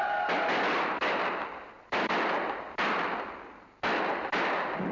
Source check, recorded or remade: recorded